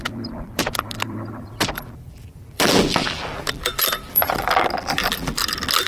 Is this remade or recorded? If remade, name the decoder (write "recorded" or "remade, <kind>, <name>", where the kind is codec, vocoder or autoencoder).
remade, vocoder, BigVGAN v2